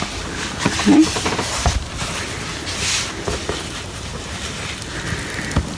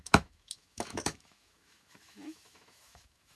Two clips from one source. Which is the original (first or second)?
first